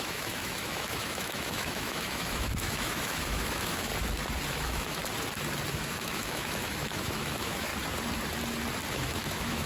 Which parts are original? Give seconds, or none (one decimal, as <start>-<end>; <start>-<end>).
3.9-4.5; 5.0-5.7; 7.7-8.9